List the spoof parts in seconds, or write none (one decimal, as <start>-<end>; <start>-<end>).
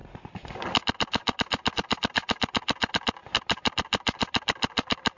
none